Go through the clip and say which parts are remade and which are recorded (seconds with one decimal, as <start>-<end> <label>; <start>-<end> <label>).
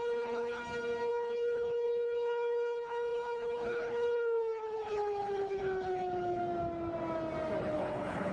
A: 0.0-0.6 remade; 0.6-1.1 recorded; 1.1-6.4 remade; 6.4-7.6 recorded; 7.6-8.3 remade